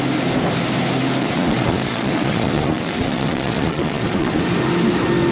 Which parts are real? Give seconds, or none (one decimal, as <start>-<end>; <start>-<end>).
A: 0.0-1.2; 4.4-5.3